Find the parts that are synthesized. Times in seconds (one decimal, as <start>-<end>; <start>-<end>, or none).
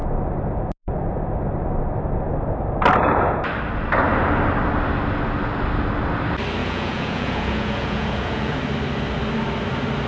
6.6-8.6